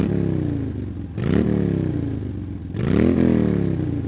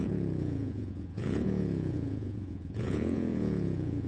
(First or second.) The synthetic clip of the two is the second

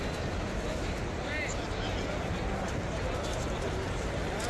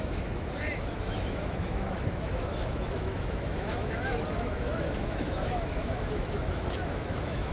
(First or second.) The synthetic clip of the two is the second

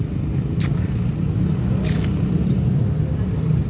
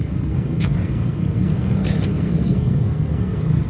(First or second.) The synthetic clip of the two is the second